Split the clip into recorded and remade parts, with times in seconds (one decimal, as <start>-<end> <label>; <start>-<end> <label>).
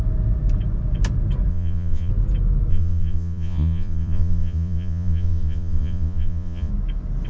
0.0-1.5 recorded; 1.5-2.1 remade; 2.1-2.7 recorded; 2.7-6.7 remade; 6.7-7.3 recorded